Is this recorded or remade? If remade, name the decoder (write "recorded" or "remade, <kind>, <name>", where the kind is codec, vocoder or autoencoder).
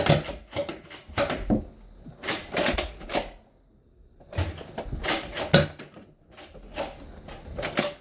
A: recorded